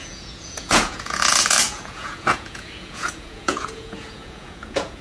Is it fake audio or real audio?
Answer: fake